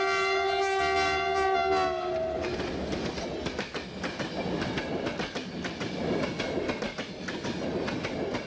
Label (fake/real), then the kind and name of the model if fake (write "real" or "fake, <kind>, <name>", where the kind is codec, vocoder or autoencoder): real